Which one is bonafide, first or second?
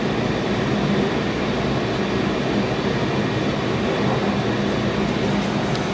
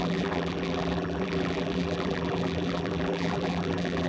first